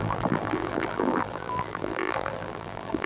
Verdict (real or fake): fake